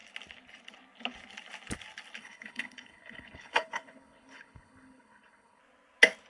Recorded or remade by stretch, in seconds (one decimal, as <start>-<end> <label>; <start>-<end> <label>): 0.0-2.2 recorded; 2.2-5.6 remade; 5.6-6.3 recorded